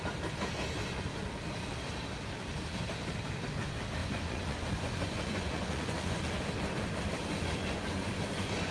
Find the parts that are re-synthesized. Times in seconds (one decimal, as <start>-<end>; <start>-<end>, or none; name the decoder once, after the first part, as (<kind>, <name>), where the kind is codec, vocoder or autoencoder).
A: 4.0-6.4 (vocoder, Vocos); 7.6-8.7